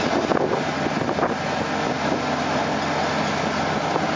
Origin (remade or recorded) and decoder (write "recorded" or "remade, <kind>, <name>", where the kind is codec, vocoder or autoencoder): recorded